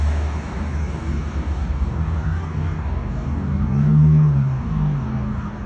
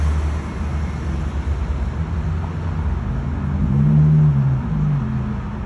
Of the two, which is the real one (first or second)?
second